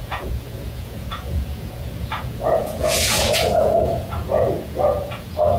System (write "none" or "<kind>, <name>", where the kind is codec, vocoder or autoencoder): vocoder, Vocos